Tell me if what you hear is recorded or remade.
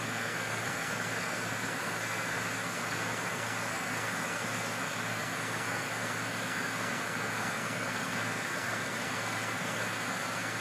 remade